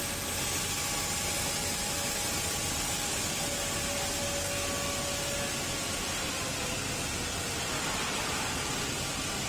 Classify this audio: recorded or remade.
recorded